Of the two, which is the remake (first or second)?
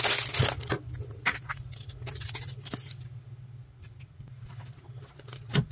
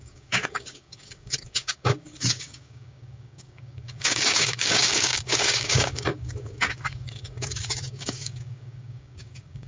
second